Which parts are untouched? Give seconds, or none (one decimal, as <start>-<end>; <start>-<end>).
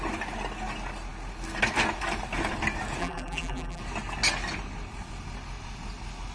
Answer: 0.0-3.0; 3.8-6.3